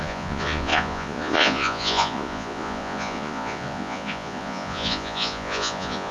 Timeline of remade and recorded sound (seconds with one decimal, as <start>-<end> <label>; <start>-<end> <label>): 0.0-6.1 remade